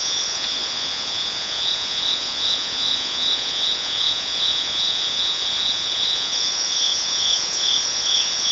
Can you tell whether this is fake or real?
fake